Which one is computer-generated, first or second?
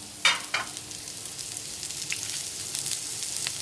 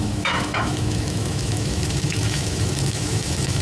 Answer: second